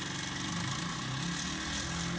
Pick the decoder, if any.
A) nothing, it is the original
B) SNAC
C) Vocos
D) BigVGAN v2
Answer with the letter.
A